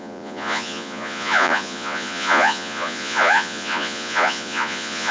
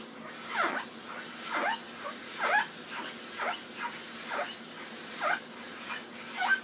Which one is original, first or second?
second